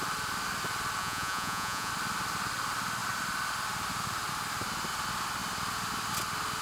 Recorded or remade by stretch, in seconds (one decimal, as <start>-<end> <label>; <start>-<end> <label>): 0.0-1.0 recorded; 1.0-1.9 remade; 1.9-6.6 recorded